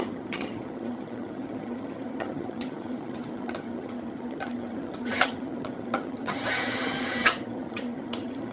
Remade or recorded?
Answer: remade